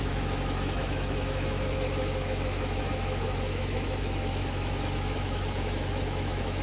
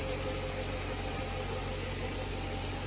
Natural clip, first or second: second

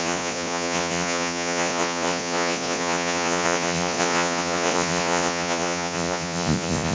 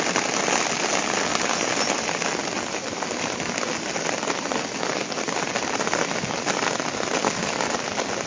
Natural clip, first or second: second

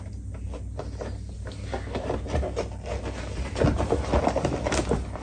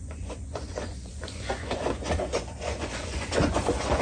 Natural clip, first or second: first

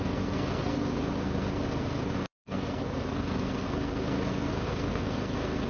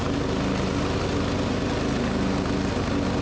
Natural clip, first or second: second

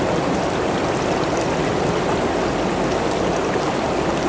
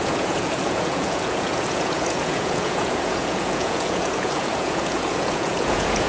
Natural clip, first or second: first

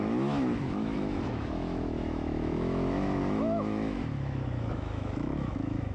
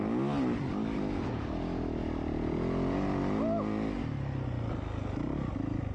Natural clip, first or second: second